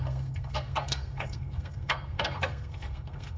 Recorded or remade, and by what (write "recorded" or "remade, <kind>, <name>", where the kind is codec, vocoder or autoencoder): remade, codec, SNAC